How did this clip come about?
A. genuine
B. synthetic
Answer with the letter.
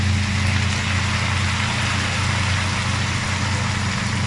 A